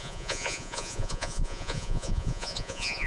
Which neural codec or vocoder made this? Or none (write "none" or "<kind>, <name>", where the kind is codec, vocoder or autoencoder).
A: vocoder, Vocos